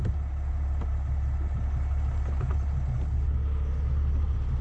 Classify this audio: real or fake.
real